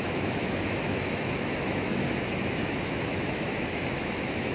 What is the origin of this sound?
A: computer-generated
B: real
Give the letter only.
A